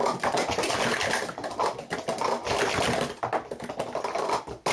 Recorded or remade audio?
recorded